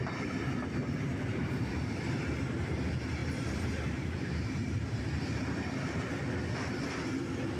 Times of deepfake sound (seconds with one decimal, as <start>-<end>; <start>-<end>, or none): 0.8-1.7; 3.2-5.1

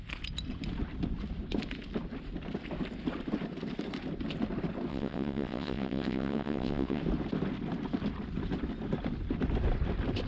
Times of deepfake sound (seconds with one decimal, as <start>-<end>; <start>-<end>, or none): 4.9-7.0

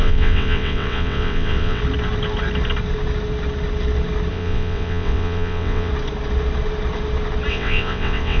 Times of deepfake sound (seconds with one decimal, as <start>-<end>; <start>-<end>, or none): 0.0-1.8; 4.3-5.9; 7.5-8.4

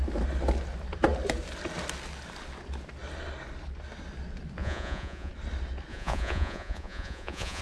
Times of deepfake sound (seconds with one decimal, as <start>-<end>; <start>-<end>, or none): 4.6-5.3; 5.9-7.6

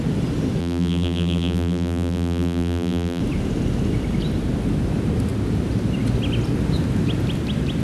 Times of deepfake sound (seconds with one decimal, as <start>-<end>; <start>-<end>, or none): 0.6-3.2